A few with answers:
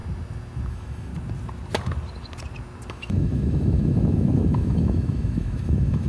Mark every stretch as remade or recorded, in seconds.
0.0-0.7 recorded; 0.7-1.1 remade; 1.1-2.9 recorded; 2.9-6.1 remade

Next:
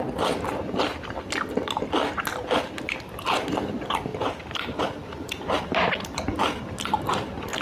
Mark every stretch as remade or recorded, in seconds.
0.0-7.6 recorded

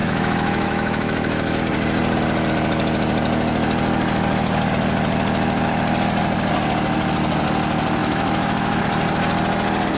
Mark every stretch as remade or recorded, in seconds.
0.0-1.6 remade; 1.6-8.0 recorded; 8.0-8.8 remade; 8.8-10.0 recorded

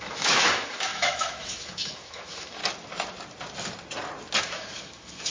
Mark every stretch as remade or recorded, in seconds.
0.0-2.6 remade; 2.6-4.4 recorded; 4.4-5.3 remade

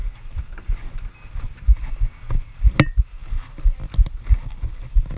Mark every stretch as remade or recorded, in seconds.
0.0-5.2 recorded

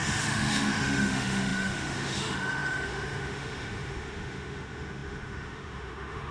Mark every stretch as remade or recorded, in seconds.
0.0-6.3 remade

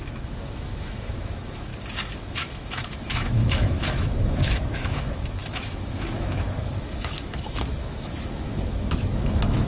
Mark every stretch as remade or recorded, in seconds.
0.0-1.7 remade; 1.7-2.3 recorded; 2.3-9.7 remade